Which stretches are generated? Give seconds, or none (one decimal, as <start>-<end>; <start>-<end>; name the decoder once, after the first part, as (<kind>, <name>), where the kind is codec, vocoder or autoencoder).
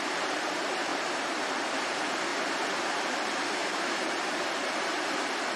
0.0-0.9 (vocoder, BigVGAN v2); 1.7-2.3; 2.8-5.6